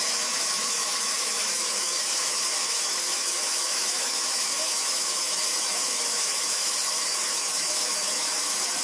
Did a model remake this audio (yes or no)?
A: yes